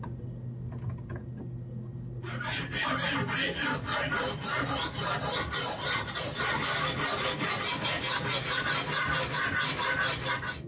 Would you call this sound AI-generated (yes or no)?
no